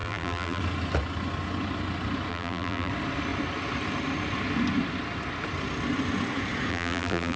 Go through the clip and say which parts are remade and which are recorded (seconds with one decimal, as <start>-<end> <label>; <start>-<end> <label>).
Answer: 0.0-0.6 remade; 0.6-2.3 recorded; 2.3-2.9 remade; 2.9-6.7 recorded; 6.7-7.4 remade